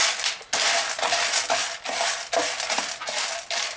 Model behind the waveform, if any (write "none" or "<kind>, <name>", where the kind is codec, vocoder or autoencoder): none